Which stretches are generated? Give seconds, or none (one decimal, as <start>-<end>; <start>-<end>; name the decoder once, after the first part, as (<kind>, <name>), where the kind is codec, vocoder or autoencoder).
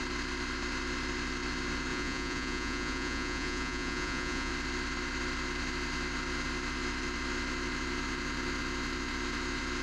1.9-4.5 (vocoder, Vocos)